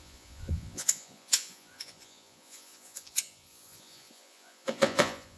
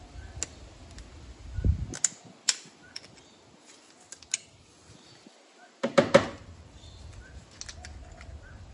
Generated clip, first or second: first